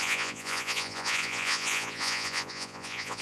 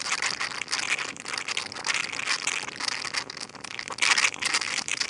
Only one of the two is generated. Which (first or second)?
first